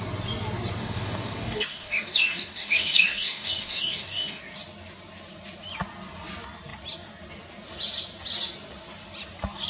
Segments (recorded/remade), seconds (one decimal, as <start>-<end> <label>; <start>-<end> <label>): 0.0-0.8 recorded; 0.8-4.4 remade; 4.4-9.7 recorded